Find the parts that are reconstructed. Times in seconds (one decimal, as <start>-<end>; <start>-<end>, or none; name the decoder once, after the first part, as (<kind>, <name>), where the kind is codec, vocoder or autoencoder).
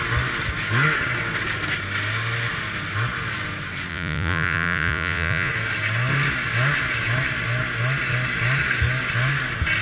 3.9-5.5 (vocoder, Vocos)